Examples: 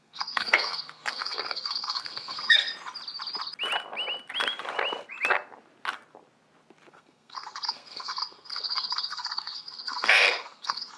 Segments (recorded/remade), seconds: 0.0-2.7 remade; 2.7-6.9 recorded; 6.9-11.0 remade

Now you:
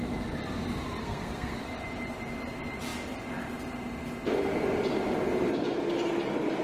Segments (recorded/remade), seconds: 0.0-1.0 recorded; 1.0-1.6 remade; 1.6-6.6 recorded

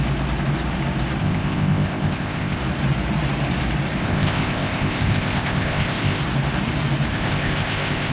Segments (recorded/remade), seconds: 0.0-1.2 recorded; 1.2-2.6 remade; 2.6-4.0 recorded; 4.0-6.2 remade; 6.2-7.1 recorded; 7.1-8.1 remade

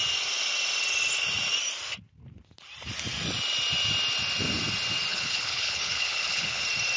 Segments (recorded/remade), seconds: 0.0-5.1 recorded; 5.1-6.6 remade; 6.6-7.0 recorded

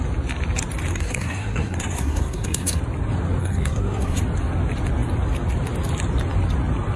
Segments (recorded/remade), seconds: 0.0-0.9 recorded; 0.9-2.8 remade; 2.8-3.4 recorded; 3.4-4.2 remade; 4.2-7.0 recorded

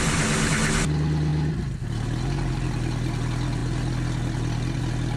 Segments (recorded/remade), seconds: 0.0-5.2 recorded

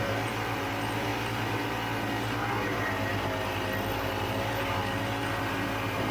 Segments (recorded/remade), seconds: 0.0-1.1 remade; 1.1-4.3 recorded; 4.3-4.8 remade; 4.8-5.4 recorded; 5.4-6.1 remade